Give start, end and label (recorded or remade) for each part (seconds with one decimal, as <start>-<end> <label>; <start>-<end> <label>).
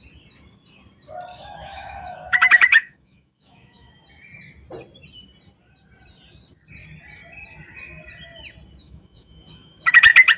0.0-1.3 recorded; 1.3-3.9 remade; 3.9-8.8 recorded; 8.8-9.9 remade; 9.9-10.4 recorded